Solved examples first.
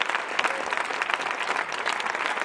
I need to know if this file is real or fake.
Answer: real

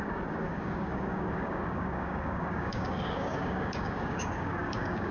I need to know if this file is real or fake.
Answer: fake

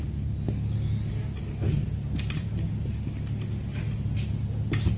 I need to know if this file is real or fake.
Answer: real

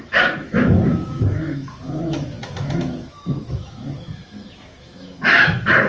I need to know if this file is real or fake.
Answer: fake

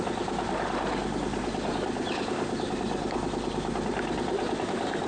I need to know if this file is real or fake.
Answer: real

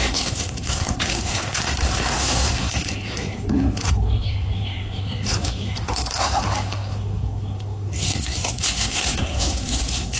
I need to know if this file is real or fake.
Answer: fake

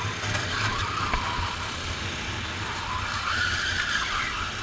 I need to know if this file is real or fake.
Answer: real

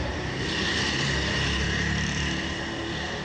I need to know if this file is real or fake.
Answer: fake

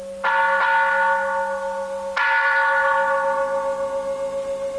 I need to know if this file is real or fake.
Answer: real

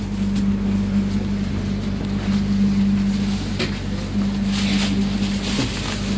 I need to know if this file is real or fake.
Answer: real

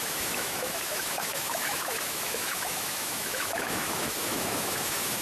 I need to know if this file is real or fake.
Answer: fake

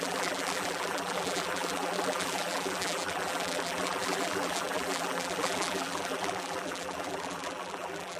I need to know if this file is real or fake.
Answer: fake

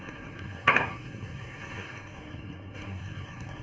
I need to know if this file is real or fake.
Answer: fake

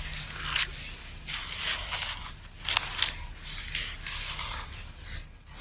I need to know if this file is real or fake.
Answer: real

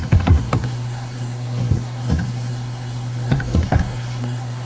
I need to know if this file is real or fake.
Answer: fake